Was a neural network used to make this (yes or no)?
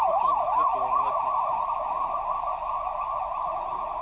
no